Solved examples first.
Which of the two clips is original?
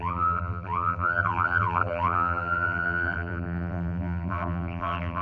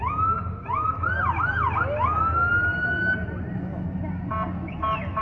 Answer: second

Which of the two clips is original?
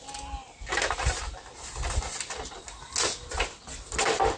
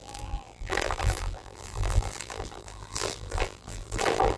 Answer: first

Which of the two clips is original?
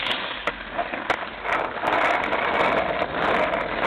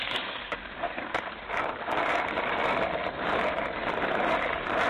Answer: first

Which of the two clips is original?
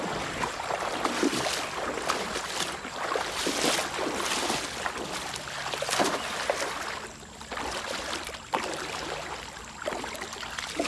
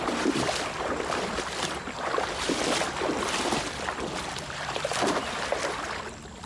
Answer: first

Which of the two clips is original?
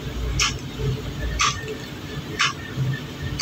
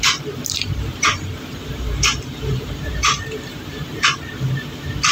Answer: first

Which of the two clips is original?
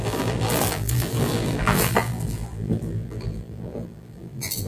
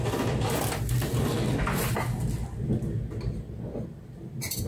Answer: second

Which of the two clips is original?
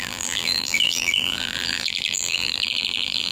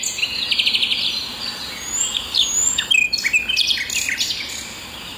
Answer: second